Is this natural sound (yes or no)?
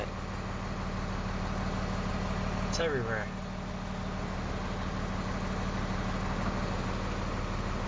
yes